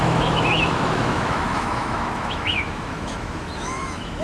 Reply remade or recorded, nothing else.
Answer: remade